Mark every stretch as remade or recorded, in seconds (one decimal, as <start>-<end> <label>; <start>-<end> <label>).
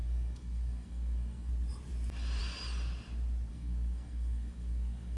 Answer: 0.0-1.5 remade; 1.5-3.5 recorded; 3.5-5.2 remade